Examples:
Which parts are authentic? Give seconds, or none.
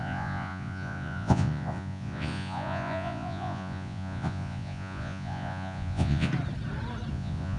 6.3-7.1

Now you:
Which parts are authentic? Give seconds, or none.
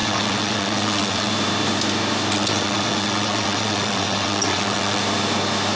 1.3-2.3; 5.0-5.8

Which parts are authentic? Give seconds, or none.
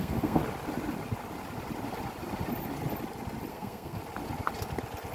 0.4-3.5; 4.0-5.1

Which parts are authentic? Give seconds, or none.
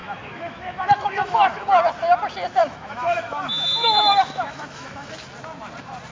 1.8-2.6; 5.1-6.1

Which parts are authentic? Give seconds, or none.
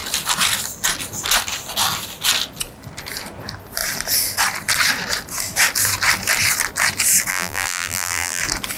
0.0-7.3; 8.4-8.8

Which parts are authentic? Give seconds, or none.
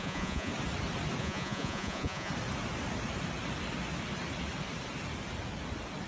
0.5-1.2; 2.3-6.1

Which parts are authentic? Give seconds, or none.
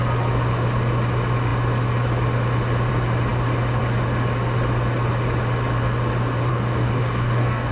0.0-6.5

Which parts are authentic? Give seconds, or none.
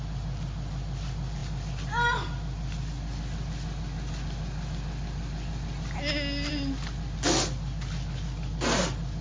0.0-9.2